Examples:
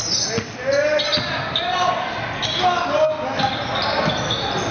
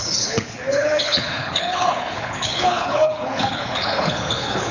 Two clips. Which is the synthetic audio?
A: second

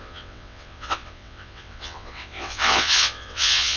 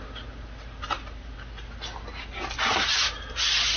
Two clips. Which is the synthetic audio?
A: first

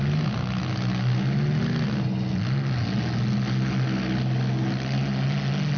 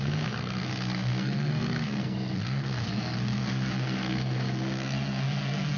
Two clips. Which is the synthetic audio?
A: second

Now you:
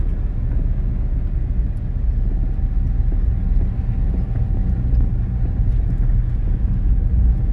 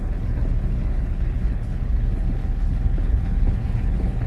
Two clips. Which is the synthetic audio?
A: second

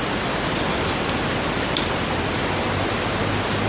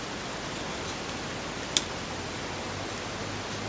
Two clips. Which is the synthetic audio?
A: first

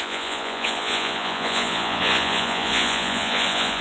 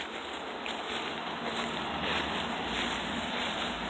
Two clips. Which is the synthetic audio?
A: first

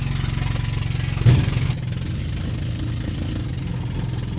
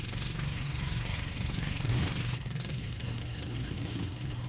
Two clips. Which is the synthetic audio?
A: second